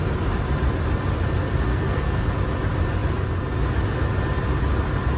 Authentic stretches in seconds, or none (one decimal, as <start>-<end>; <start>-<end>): 0.0-1.7; 2.3-5.2